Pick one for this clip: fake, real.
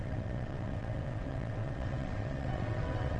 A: fake